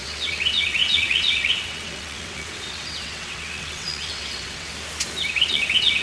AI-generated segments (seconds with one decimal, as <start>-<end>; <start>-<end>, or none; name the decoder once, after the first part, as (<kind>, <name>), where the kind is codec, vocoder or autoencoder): 0.0-4.7 (vocoder, WaveNeXt); 5.3-6.0